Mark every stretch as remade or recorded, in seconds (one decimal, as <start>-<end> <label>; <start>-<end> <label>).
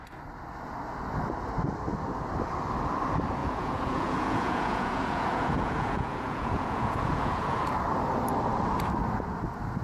0.0-3.4 recorded; 3.4-7.6 remade; 7.6-9.8 recorded